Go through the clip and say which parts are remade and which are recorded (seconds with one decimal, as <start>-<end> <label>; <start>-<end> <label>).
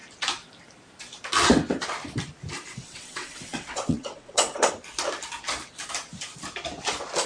0.0-2.7 recorded; 2.7-4.7 remade; 4.7-7.3 recorded